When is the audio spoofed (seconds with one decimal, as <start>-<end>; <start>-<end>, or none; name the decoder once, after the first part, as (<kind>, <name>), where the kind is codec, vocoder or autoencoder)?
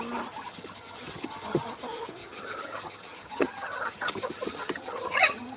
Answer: 0.4-1.7 (vocoder, HiFi-GAN); 2.2-5.6